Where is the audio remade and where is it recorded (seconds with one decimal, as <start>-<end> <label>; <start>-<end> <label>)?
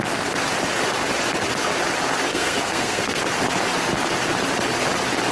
0.0-2.3 recorded; 2.3-3.2 remade; 3.2-5.3 recorded